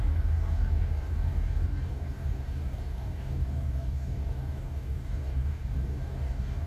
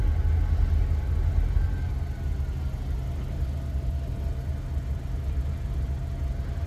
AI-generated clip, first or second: first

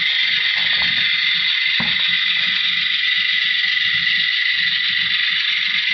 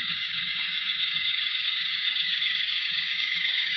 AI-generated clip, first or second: second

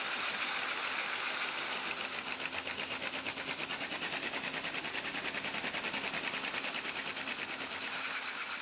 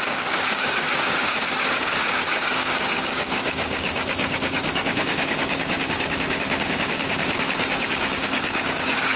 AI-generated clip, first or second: second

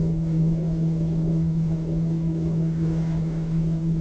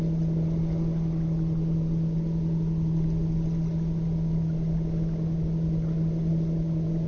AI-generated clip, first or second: first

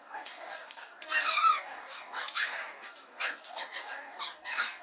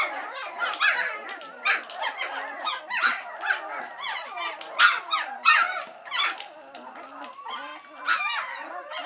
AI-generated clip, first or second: first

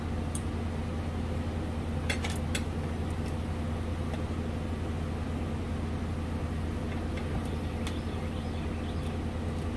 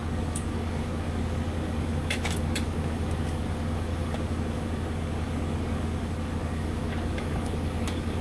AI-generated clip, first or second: second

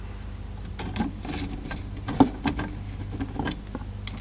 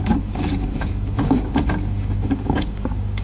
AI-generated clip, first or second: second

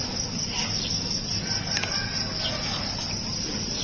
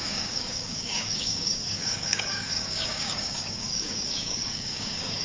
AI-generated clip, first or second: second